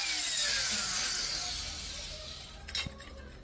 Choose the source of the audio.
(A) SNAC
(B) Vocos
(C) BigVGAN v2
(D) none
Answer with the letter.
D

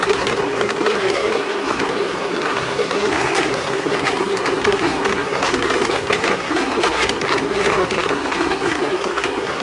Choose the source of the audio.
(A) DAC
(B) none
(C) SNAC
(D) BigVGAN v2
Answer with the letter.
C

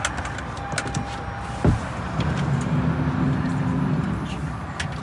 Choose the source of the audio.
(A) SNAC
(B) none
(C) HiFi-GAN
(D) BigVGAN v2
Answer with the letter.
B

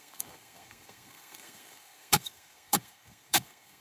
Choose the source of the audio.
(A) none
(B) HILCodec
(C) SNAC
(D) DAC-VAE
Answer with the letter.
C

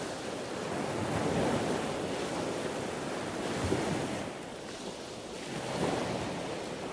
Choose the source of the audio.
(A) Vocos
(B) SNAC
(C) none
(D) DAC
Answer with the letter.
C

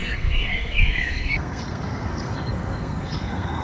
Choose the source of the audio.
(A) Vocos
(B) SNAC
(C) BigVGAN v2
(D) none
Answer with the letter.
B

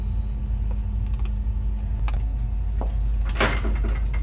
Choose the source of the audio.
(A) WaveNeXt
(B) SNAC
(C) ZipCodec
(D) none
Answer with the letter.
D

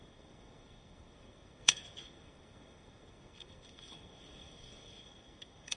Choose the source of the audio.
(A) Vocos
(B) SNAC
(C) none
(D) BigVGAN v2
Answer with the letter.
B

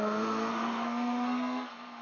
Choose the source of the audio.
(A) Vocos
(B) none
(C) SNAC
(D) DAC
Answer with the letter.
C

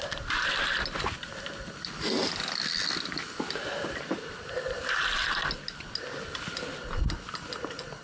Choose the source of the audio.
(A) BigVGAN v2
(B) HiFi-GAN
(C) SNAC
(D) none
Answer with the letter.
D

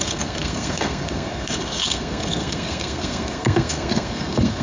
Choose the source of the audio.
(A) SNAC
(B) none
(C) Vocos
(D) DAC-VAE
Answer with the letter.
A